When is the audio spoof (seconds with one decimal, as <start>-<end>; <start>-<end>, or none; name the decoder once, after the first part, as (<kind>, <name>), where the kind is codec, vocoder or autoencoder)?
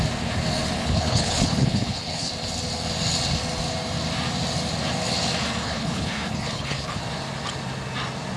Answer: 0.8-2.3 (codec, HILCodec); 5.6-7.0